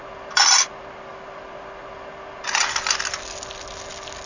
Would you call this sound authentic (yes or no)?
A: yes